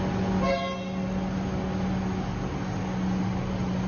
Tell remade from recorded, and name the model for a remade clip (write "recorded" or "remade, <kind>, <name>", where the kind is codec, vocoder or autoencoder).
recorded